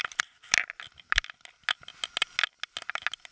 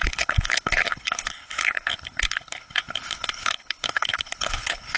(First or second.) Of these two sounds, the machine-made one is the second